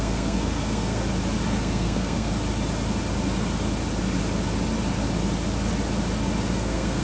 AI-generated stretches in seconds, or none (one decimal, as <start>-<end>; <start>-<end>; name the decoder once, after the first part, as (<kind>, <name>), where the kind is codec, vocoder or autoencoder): 0.0-1.0 (codec, SNAC); 1.6-2.3; 6.5-7.0